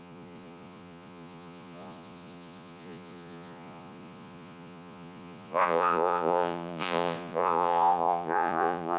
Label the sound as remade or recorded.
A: remade